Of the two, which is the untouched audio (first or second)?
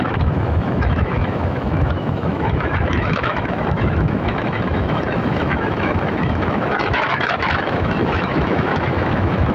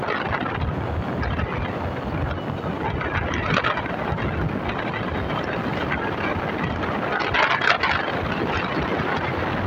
second